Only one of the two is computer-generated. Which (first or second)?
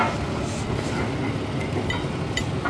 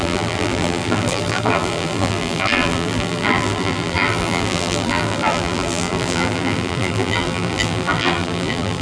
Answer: second